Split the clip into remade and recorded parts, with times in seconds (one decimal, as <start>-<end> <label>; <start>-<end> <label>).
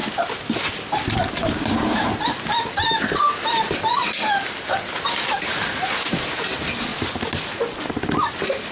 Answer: 0.0-0.7 recorded; 0.7-6.9 remade; 6.9-7.9 recorded; 7.9-8.7 remade